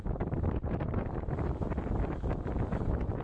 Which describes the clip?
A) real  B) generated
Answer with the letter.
A